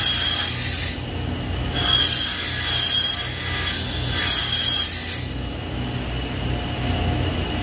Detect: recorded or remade recorded